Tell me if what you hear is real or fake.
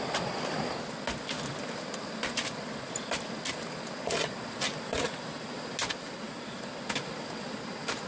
real